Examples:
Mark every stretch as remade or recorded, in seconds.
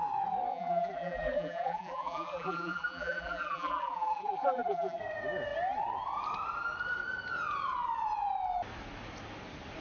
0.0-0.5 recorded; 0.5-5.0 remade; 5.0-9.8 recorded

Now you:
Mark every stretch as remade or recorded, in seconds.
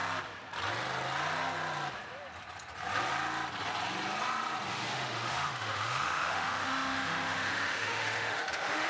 0.0-4.7 recorded; 4.7-8.9 remade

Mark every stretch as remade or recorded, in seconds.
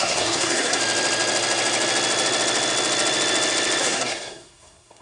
0.0-0.8 remade; 0.8-3.8 recorded; 3.8-5.0 remade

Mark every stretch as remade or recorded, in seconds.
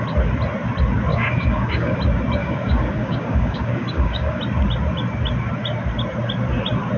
0.0-1.1 recorded; 1.1-2.0 remade; 2.0-2.4 recorded; 2.4-4.4 remade; 4.4-7.0 recorded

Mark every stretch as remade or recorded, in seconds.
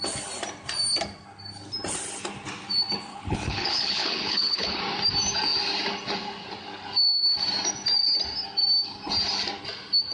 0.0-3.1 recorded; 3.1-4.8 remade; 4.8-10.1 recorded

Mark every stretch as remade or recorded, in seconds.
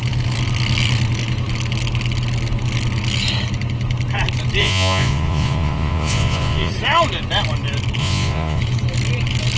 0.0-4.6 recorded; 4.6-6.7 remade; 6.7-8.0 recorded; 8.0-8.6 remade; 8.6-9.6 recorded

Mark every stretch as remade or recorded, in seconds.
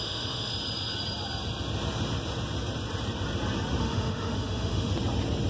0.0-0.5 remade; 0.5-3.8 recorded; 3.8-4.9 remade; 4.9-5.5 recorded